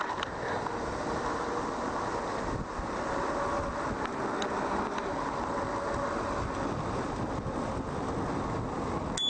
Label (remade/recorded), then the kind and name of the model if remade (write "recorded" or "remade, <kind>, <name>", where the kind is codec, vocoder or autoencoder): recorded